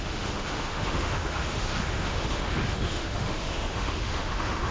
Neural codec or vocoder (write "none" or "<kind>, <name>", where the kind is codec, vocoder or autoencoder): autoencoder, DAC-VAE